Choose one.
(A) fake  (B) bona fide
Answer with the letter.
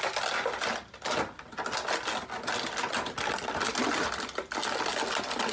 B